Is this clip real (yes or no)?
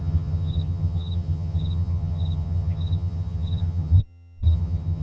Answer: no